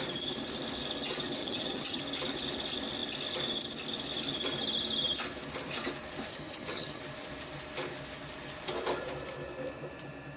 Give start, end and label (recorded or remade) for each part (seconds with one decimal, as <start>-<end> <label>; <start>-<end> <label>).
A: 0.0-1.4 recorded; 1.4-2.0 remade; 2.0-6.3 recorded; 6.3-7.0 remade; 7.0-10.4 recorded